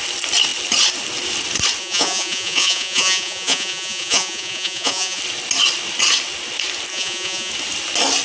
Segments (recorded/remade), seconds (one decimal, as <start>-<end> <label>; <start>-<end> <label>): 0.0-1.8 recorded; 1.8-5.2 remade; 5.2-6.9 recorded; 6.9-7.5 remade; 7.5-8.2 recorded